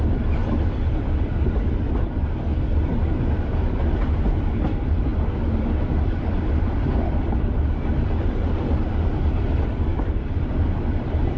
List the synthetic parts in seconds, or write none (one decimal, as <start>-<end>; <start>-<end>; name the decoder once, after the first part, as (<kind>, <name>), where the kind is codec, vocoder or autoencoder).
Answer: 0.0-0.4 (vocoder, BigVGAN v2); 4.1-5.1; 5.9-11.4